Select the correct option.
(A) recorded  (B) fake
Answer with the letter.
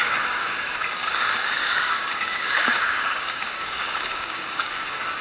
B